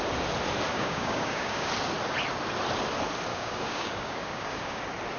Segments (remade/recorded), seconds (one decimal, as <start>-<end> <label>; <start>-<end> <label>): 0.0-0.7 recorded; 0.7-1.7 remade; 1.7-3.3 recorded; 3.3-4.8 remade; 4.8-5.2 recorded